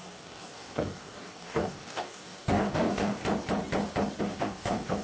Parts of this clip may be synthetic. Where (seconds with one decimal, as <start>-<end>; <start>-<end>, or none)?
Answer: 0.0-3.2; 4.2-5.0